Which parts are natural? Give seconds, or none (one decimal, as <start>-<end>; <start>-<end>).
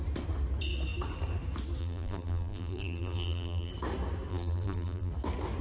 0.0-1.8; 3.7-4.3; 5.1-5.6